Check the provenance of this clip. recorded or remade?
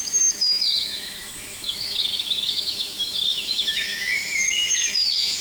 remade